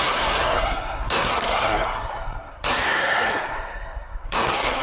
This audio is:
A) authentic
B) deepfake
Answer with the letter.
B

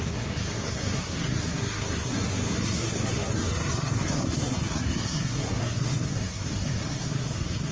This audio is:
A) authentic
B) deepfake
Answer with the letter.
B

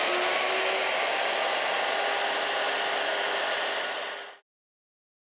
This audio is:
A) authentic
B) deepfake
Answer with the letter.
A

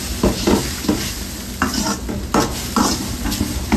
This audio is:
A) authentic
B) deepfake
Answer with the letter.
A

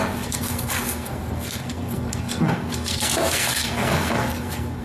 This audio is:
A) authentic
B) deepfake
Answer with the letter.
B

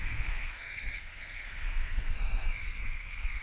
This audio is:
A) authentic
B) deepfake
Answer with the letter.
B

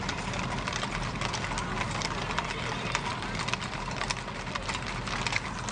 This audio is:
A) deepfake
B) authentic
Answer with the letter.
B